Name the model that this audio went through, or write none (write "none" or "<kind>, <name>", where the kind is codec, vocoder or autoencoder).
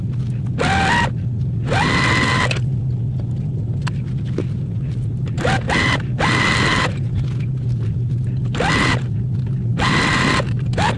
none